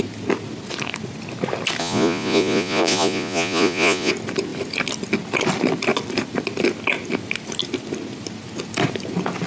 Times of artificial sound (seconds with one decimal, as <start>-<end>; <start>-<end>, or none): 1.8-4.1